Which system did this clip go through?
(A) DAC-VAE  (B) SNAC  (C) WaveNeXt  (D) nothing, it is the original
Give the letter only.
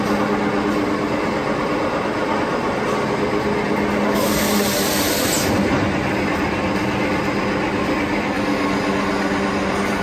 D